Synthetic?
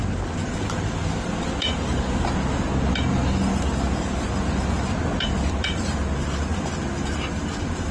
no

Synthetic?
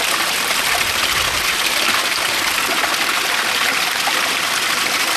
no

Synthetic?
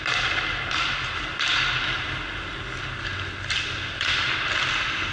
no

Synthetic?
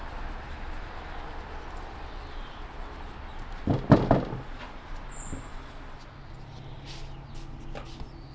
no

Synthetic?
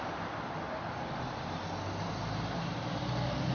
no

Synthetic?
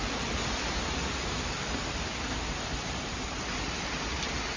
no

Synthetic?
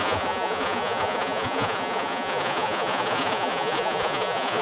yes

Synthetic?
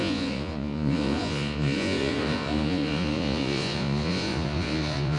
yes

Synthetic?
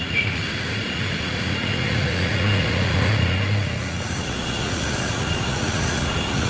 yes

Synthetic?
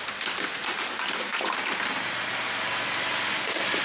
no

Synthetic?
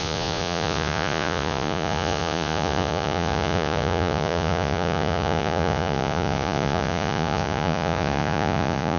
yes